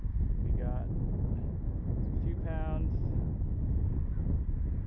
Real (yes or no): yes